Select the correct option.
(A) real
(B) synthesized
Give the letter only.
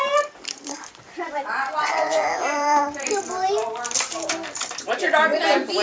B